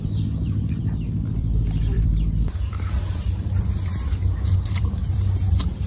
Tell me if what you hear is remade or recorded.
remade